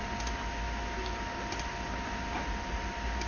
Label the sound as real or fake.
real